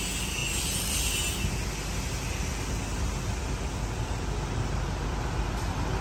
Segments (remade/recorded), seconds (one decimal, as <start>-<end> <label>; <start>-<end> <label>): 0.0-6.0 recorded